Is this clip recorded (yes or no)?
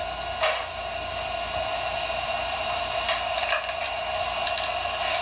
yes